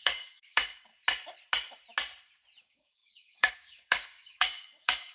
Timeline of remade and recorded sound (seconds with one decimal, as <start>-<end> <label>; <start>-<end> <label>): 0.0-0.9 remade; 0.9-2.6 recorded; 2.6-5.1 remade